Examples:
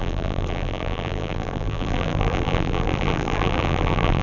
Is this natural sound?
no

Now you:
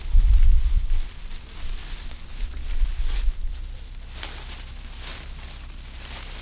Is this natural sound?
yes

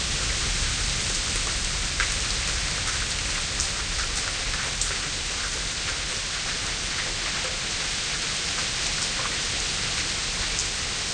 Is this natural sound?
yes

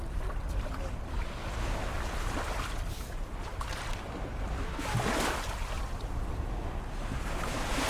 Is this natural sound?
yes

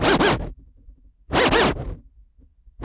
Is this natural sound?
yes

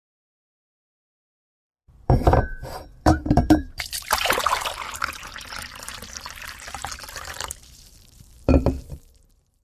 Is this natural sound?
no